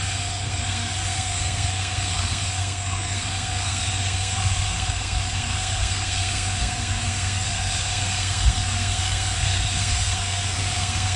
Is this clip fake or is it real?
fake